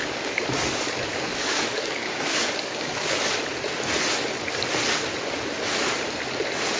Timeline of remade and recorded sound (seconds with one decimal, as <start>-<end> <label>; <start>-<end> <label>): 0.0-3.1 remade; 3.1-6.8 recorded